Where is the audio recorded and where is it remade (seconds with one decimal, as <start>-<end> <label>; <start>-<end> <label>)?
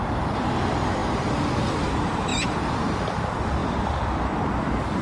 0.0-1.0 remade; 1.0-1.7 recorded; 1.7-2.3 remade; 2.3-3.2 recorded; 3.2-5.0 remade